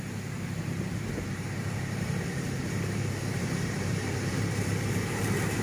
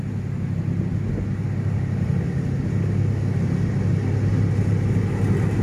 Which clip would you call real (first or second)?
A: second